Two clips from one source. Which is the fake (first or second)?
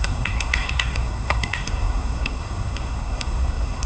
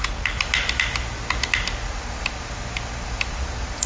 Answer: first